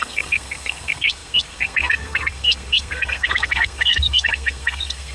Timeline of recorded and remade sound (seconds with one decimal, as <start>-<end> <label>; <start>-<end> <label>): 0.0-5.1 remade